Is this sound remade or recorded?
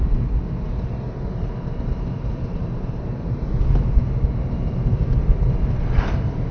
recorded